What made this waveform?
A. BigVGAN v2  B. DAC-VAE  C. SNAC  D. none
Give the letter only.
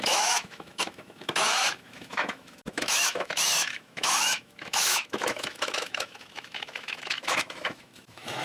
B